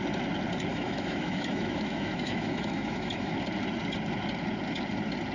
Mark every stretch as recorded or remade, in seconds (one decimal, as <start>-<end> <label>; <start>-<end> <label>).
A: 0.0-0.7 recorded; 0.7-3.3 remade; 3.3-5.3 recorded